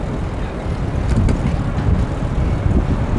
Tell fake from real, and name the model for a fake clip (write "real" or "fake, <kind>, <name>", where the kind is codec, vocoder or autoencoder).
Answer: real